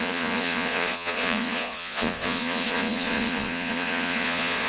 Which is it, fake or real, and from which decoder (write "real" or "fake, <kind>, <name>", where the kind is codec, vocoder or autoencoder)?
fake, vocoder, Vocos